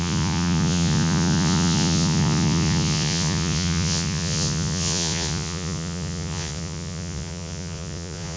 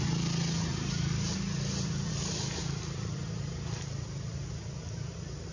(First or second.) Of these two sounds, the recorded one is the second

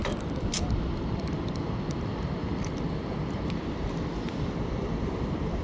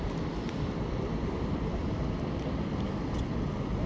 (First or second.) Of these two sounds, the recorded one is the second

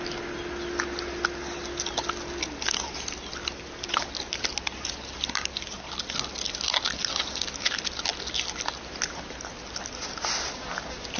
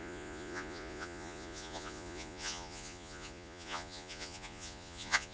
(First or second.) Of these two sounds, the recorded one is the first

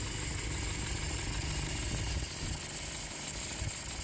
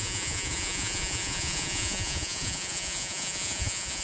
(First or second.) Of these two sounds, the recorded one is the first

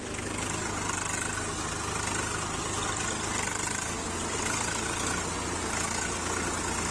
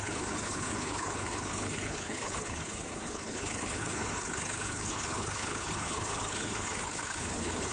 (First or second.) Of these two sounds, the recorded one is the first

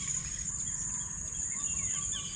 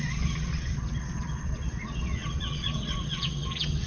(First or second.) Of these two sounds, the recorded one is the first